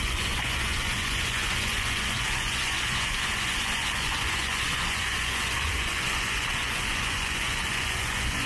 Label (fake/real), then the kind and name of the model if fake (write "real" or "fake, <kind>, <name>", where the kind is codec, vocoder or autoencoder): fake, vocoder, Vocos